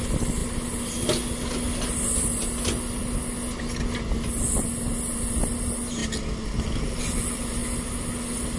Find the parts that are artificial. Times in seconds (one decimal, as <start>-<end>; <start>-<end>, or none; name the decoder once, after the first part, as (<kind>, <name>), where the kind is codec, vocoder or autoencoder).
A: none